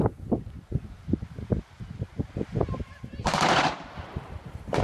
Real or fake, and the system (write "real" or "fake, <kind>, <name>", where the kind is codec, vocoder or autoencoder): fake, vocoder, BigVGAN v2